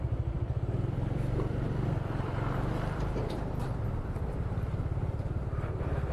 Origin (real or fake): fake